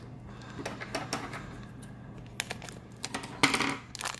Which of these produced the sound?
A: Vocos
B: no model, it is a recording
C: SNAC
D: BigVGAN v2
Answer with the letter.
B